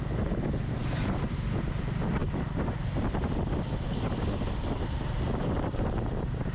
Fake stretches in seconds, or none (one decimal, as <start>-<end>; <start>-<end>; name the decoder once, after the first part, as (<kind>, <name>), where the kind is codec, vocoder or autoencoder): none